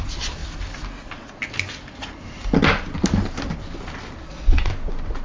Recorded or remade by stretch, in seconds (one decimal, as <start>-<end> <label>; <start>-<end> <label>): 0.0-4.2 recorded; 4.2-4.7 remade; 4.7-5.2 recorded